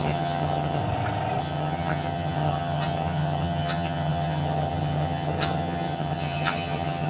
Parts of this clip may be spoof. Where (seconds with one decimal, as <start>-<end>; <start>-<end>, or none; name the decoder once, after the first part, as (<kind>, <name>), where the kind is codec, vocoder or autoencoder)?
0.0-0.8 (vocoder, HiFi-GAN); 1.4-7.1